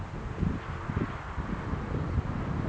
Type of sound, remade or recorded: recorded